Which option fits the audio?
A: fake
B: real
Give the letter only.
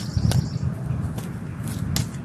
B